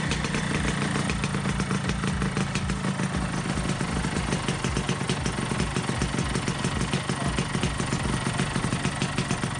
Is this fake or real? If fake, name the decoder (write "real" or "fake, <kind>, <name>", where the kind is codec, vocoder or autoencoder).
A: real